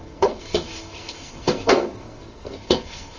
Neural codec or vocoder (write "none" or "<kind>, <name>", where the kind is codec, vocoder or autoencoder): codec, SNAC